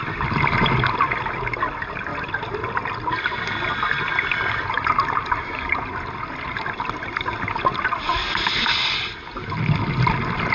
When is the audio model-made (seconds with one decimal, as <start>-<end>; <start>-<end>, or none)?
none